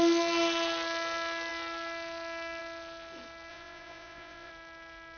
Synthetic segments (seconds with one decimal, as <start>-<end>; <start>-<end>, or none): 3.5-4.5